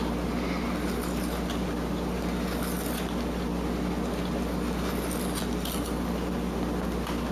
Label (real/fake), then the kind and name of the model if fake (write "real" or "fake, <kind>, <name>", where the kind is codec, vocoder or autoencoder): real